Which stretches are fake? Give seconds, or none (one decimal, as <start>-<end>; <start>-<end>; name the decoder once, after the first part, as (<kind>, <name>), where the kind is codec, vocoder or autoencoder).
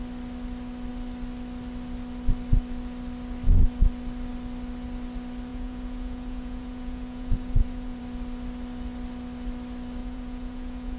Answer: 5.5-8.0 (vocoder, Vocos); 10.0-11.0